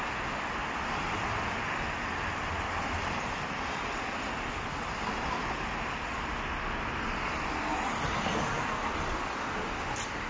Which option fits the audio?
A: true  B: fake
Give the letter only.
A